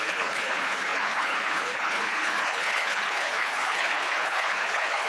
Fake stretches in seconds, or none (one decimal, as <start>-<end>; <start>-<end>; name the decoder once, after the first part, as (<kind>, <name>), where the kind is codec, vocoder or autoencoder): 0.0-5.1 (codec, HILCodec)